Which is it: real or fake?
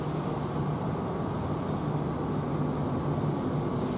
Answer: real